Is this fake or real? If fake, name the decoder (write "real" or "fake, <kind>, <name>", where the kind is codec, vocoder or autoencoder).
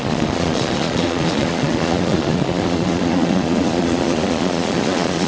fake, vocoder, Vocos